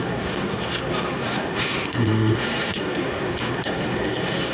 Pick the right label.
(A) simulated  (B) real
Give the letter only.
A